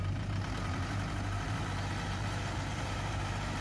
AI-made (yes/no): yes